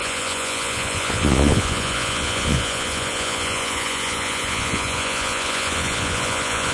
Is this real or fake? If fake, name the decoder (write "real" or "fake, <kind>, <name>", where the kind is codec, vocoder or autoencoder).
fake, vocoder, Vocos